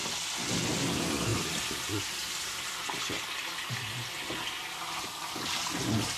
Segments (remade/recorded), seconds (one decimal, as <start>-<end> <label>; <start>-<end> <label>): 0.0-1.3 recorded; 1.3-3.0 remade; 3.0-6.2 recorded